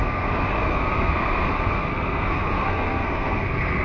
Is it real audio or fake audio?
fake